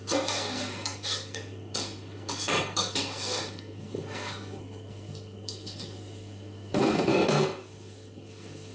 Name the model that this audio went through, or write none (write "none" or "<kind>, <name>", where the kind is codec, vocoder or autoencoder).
codec, SNAC